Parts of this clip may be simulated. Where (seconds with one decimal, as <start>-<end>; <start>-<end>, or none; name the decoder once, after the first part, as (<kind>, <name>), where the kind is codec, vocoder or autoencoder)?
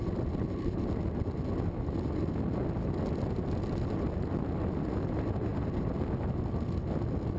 none